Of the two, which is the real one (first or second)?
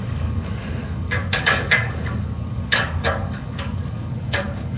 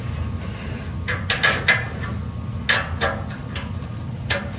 second